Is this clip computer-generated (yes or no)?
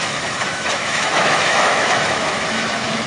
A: yes